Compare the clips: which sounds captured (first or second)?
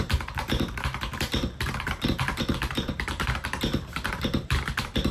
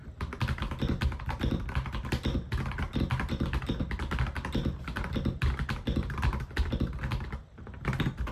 second